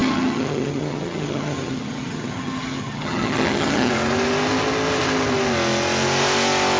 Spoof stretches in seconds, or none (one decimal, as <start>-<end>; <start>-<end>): 0.0-3.9